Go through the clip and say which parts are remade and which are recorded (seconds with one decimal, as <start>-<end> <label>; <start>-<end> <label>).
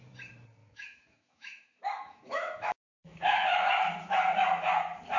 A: 0.0-0.6 recorded; 0.6-3.7 remade; 3.7-5.2 recorded